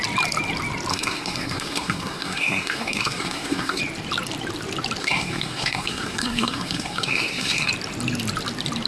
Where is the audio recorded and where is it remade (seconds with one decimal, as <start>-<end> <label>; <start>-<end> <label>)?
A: 0.0-0.9 recorded; 0.9-3.8 remade; 3.8-5.0 recorded; 5.0-7.7 remade; 7.7-8.9 recorded